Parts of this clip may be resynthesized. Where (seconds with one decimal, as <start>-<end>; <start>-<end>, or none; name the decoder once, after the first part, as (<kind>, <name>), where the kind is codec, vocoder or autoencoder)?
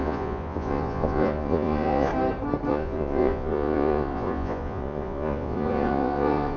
0.0-2.1 (vocoder, Vocos); 2.7-6.6